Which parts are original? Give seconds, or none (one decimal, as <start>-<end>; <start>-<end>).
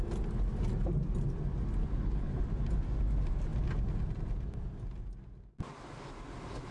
0.0-1.8; 2.4-6.7